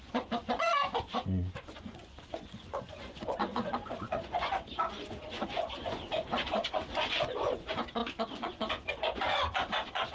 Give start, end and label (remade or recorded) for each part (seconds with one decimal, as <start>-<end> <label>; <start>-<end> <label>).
0.0-10.1 remade